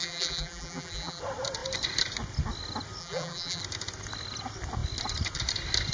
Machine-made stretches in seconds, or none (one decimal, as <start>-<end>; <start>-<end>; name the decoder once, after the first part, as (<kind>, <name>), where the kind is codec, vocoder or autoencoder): 0.0-1.2 (vocoder, BigVGAN v2); 3.0-3.6